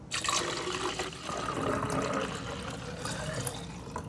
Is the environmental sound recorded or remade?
recorded